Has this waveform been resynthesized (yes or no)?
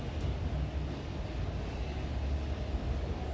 no